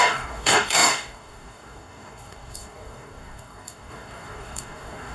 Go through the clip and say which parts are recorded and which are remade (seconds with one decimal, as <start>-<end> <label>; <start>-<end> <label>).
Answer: 0.0-5.1 remade